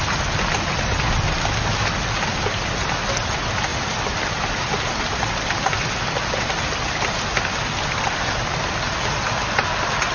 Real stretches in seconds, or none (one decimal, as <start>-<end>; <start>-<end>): 0.0-3.7; 6.9-10.1